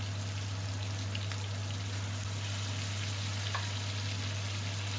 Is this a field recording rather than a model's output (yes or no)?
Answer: yes